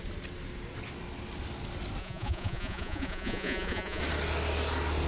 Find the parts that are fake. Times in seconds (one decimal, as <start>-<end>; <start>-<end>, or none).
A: 2.0-4.0